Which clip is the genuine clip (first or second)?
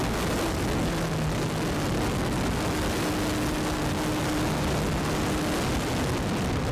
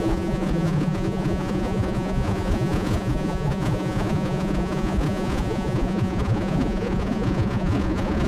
first